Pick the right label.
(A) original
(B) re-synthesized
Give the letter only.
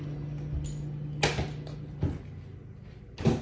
A